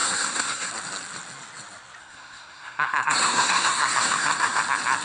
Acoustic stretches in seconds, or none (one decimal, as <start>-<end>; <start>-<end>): 0.7-2.0; 4.6-5.0